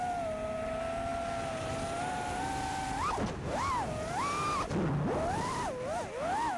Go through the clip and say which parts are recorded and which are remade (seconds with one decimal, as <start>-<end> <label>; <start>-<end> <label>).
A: 0.0-6.6 recorded